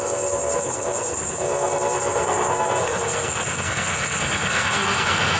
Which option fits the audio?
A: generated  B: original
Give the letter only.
A